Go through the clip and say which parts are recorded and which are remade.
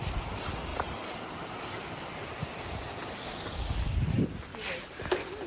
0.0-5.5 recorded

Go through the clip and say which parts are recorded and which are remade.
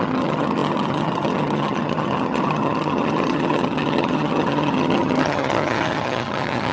0.0-6.7 remade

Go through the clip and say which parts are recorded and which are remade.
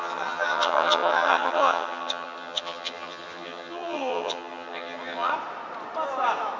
0.0-5.3 remade; 5.3-6.6 recorded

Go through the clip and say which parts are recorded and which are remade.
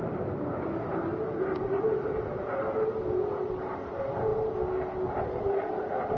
0.0-6.2 recorded